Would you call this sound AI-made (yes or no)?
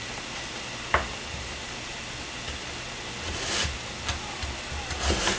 no